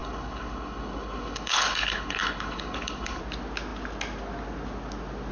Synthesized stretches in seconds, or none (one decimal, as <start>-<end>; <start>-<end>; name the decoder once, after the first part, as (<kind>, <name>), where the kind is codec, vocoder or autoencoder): 0.0-3.2 (codec, HILCodec)